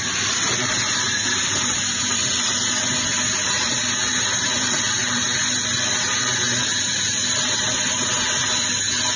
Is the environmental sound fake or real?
fake